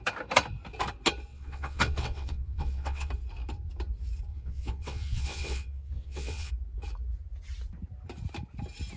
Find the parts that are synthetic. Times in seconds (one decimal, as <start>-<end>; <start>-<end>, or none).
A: 1.3-3.1; 4.3-6.5